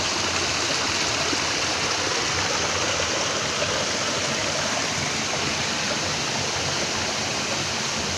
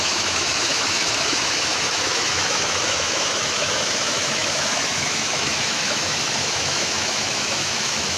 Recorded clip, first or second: first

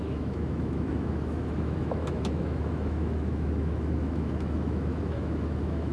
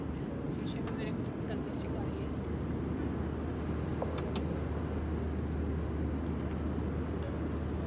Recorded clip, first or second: second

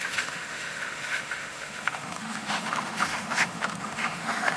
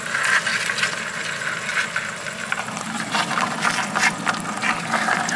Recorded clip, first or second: second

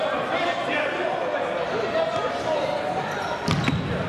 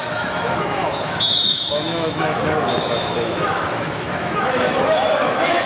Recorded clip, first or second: first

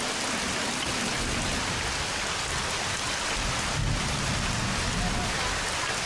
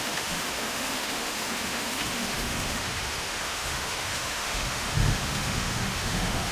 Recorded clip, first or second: first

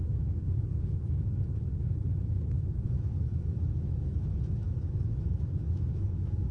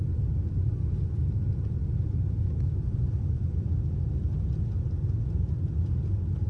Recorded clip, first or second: second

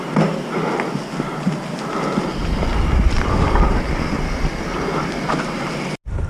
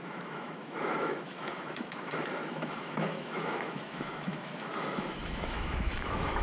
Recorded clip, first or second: first